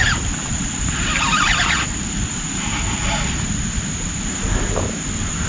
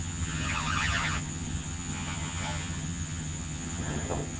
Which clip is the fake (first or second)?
second